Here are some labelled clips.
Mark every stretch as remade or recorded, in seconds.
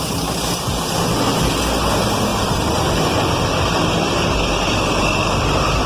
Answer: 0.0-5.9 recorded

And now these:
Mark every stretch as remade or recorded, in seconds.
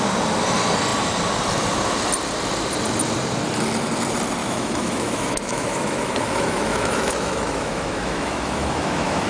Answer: 0.0-4.4 recorded; 4.4-9.3 remade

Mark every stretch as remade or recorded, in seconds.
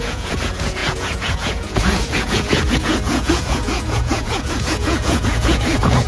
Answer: 0.0-6.1 remade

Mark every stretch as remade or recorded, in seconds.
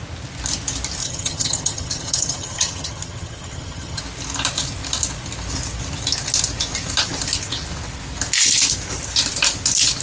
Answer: 0.0-1.0 recorded; 1.0-4.0 remade; 4.0-10.0 recorded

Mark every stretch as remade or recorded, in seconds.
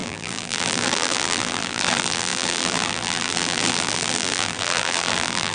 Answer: 0.0-5.5 remade